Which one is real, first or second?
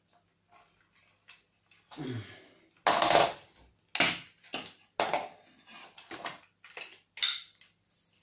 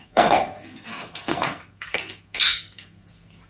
first